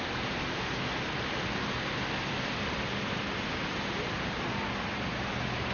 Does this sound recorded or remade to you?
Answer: recorded